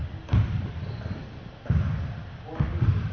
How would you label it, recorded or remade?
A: recorded